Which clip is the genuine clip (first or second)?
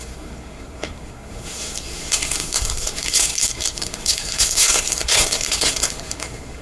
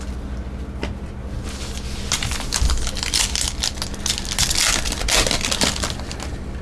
second